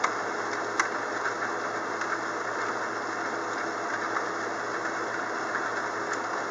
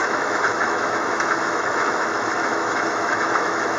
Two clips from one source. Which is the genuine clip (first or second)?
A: first